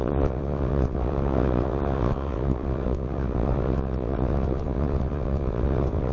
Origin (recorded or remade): remade